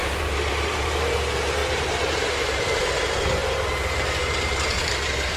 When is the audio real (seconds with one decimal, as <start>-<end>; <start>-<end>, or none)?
1.6-2.1